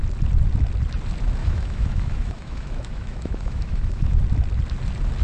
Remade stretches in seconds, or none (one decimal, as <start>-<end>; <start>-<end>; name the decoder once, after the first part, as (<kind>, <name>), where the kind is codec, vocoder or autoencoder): 1.4-4.2 (autoencoder, DAC-VAE)